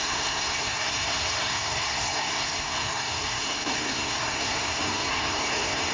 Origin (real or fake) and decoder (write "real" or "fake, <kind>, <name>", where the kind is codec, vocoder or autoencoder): fake, codec, SNAC